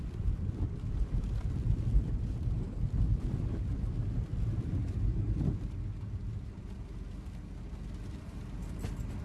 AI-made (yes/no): no